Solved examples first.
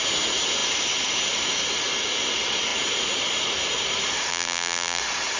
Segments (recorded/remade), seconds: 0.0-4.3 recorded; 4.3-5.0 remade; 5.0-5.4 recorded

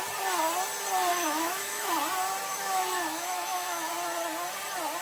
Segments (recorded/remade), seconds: 0.0-1.1 recorded; 1.1-1.9 remade; 1.9-2.5 recorded; 2.5-3.9 remade; 3.9-5.0 recorded

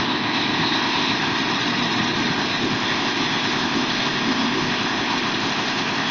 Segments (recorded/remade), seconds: 0.0-1.4 remade; 1.4-2.3 recorded; 2.3-6.1 remade

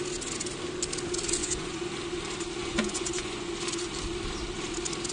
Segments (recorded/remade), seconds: 0.0-1.4 recorded; 1.4-1.9 remade; 1.9-2.6 recorded; 2.6-3.5 remade; 3.5-5.1 recorded

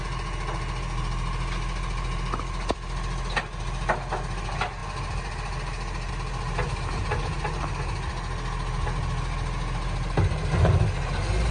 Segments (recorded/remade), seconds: 0.0-11.5 recorded